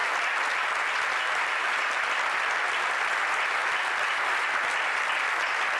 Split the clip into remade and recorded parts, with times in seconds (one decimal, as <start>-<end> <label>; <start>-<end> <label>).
0.0-5.8 recorded